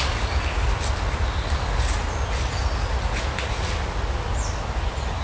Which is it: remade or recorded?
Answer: recorded